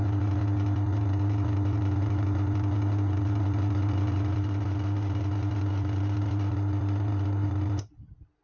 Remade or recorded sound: recorded